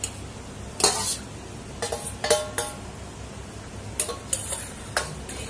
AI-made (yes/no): no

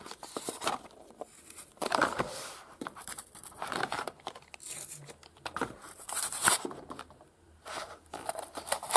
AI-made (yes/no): yes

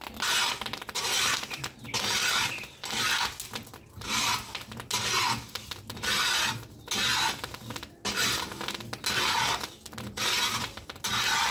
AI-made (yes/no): no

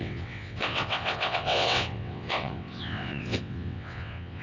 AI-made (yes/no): yes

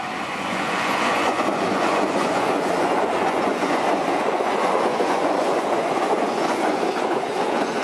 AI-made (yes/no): yes